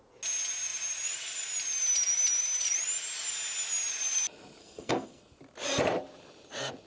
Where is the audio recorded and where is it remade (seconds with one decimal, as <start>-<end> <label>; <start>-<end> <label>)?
0.0-4.6 recorded; 4.6-5.2 remade; 5.2-6.9 recorded